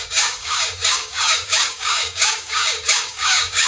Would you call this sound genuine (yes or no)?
no